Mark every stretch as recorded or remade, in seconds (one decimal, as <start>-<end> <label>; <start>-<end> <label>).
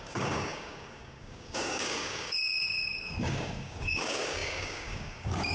0.0-5.5 remade